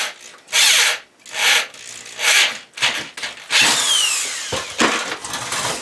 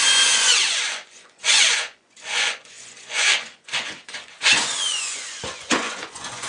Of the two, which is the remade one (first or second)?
second